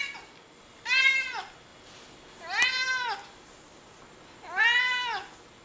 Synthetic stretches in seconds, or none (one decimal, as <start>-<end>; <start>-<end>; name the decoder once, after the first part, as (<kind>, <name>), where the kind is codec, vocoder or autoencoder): none